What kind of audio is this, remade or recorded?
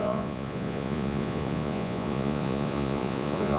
remade